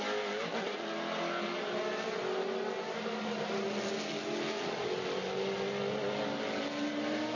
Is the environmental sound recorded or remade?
recorded